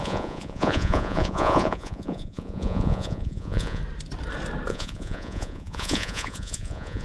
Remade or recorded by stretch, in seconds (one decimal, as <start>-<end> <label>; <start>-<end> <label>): 0.0-3.8 remade; 3.8-4.7 recorded; 4.7-7.0 remade

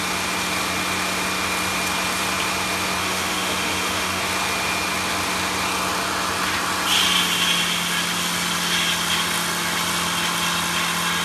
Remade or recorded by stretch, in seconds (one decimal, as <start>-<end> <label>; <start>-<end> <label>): 0.0-3.0 recorded; 3.0-4.2 remade; 4.2-11.2 recorded

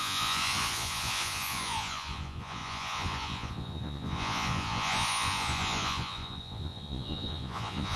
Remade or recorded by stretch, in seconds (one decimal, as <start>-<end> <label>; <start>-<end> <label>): 0.0-8.0 remade

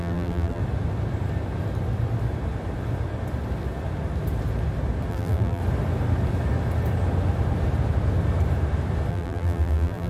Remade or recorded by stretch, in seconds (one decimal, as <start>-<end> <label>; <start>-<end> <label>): 0.0-0.6 remade; 0.6-5.1 recorded; 5.1-5.6 remade; 5.6-9.1 recorded; 9.1-10.1 remade

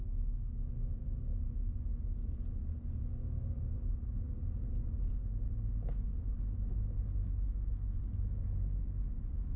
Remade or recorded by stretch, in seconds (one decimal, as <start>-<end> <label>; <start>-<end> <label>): 0.0-9.6 recorded

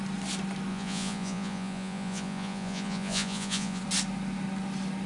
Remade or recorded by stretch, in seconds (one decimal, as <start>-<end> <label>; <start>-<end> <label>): 0.0-0.7 recorded; 0.7-3.8 remade; 3.8-5.1 recorded

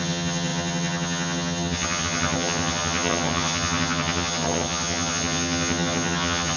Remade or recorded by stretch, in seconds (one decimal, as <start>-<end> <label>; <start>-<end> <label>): 0.0-6.6 remade

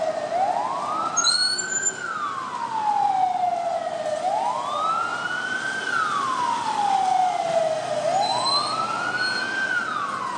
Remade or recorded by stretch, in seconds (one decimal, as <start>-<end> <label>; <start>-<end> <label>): 0.0-10.4 recorded